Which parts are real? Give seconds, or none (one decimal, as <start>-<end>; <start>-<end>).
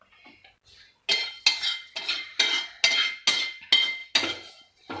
0.0-5.0